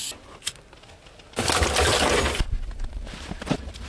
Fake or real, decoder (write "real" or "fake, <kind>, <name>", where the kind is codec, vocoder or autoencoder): real